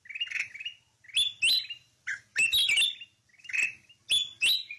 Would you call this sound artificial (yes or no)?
no